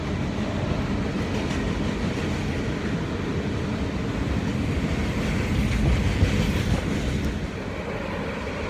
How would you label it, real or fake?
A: real